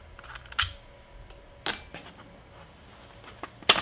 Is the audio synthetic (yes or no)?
no